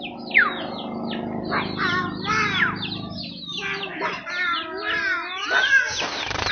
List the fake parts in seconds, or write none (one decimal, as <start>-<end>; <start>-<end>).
none